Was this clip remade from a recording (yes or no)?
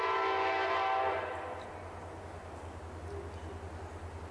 no